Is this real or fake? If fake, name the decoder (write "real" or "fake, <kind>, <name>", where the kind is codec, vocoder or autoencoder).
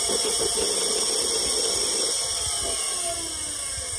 real